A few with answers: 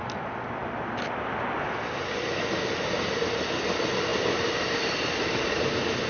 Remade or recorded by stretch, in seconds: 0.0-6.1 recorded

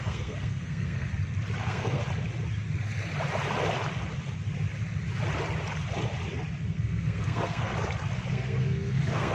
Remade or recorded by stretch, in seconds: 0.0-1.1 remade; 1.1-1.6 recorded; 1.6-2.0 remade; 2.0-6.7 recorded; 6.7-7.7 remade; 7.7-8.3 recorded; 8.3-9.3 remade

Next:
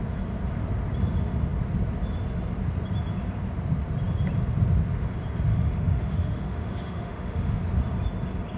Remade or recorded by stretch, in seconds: 0.0-5.5 recorded; 5.5-7.6 remade; 7.6-8.6 recorded

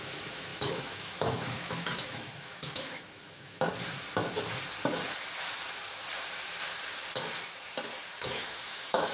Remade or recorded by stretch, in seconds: 0.0-3.7 remade; 3.7-8.2 recorded; 8.2-9.1 remade

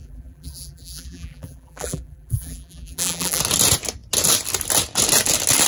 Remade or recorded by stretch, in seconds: 0.0-3.4 remade; 3.4-5.7 recorded

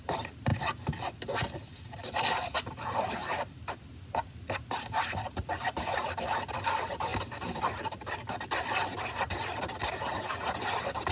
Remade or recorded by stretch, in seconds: 0.0-0.5 remade; 0.5-2.2 recorded; 2.2-11.1 remade

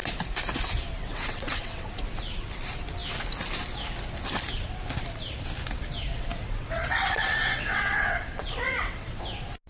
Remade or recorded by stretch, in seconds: 0.0-1.0 recorded; 1.0-2.0 remade; 2.0-6.1 recorded; 6.1-9.2 remade; 9.2-9.7 recorded